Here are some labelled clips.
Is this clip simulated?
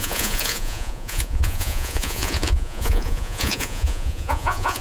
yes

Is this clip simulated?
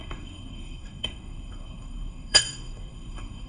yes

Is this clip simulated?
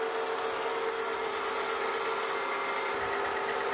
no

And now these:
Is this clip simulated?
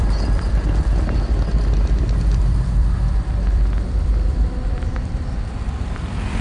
yes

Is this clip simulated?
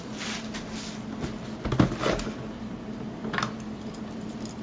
no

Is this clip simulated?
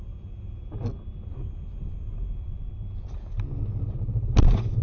no